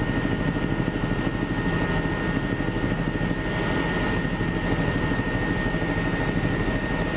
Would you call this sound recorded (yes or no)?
yes